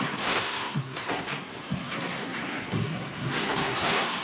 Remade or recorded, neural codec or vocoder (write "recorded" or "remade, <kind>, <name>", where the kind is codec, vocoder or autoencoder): remade, codec, SNAC